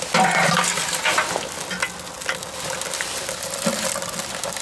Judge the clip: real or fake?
real